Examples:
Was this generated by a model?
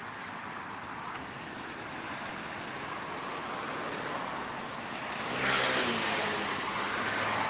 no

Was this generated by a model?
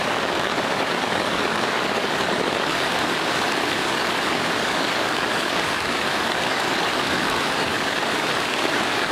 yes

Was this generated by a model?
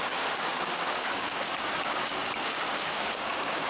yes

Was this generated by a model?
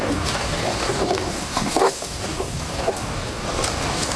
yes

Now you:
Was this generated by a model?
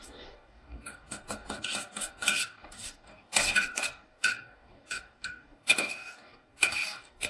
yes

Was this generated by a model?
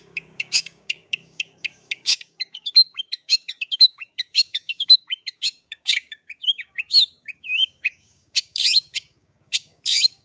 yes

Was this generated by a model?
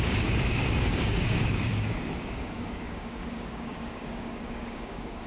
yes